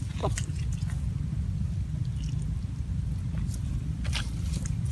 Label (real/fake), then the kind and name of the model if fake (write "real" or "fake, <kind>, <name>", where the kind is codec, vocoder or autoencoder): real